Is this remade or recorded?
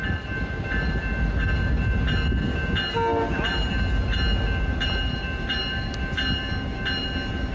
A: recorded